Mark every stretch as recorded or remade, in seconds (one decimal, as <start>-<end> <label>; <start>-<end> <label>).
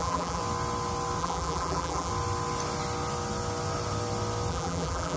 0.0-0.4 remade; 0.4-1.2 recorded; 1.2-2.1 remade; 2.1-4.5 recorded; 4.5-5.2 remade